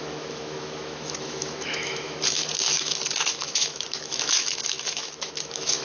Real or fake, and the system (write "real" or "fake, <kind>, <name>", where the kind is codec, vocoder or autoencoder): fake, autoencoder, DAC-VAE